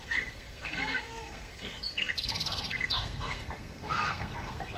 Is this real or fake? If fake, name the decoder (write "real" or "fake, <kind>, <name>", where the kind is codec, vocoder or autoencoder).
fake, codec, SNAC